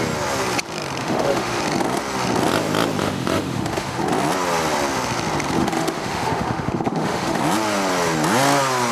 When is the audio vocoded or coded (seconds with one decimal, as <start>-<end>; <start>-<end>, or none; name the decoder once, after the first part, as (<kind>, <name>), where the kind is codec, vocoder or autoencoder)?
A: 1.0-1.6 (autoencoder, DAC-VAE); 3.0-4.0; 5.6-7.4

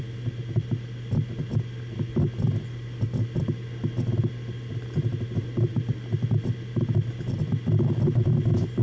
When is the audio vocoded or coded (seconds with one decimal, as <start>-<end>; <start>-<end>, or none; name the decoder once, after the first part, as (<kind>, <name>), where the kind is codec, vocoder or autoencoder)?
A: none

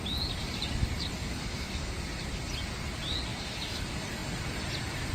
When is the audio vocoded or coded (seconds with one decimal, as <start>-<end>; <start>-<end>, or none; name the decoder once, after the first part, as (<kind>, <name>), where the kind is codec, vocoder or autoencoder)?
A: 1.2-1.9 (autoencoder, DAC-VAE); 3.3-3.8